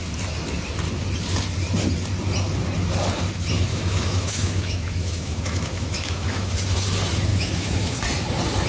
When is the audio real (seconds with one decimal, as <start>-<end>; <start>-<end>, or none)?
0.0-3.7; 6.5-7.3; 8.0-8.7